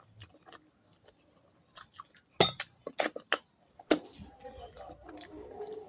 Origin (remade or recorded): recorded